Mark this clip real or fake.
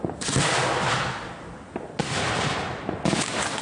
real